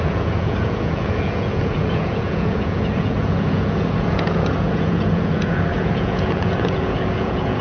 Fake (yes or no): yes